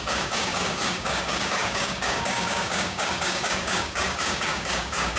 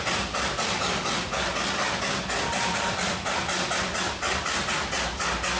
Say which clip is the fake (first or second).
first